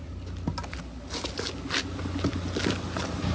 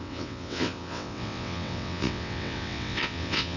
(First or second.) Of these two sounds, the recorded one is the first